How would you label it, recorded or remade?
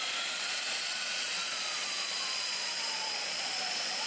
remade